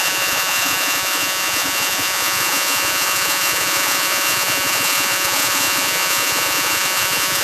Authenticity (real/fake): fake